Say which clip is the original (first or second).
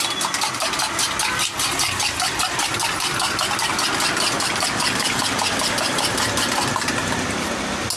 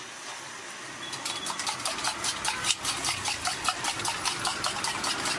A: first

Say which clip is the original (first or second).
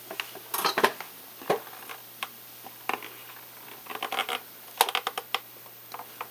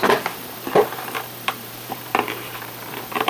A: first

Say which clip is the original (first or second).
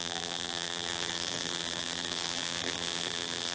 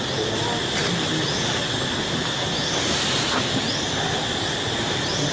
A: second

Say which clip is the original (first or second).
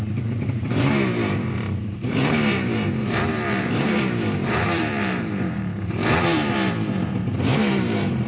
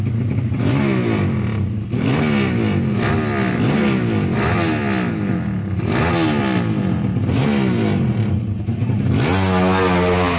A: second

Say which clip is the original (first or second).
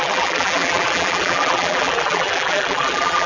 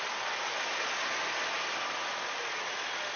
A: second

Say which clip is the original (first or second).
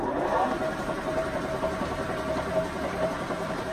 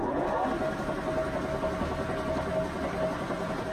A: second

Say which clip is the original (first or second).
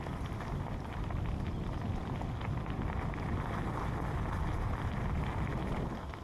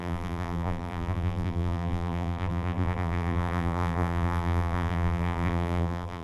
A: first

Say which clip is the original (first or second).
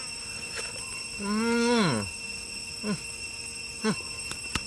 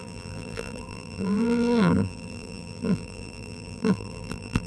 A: first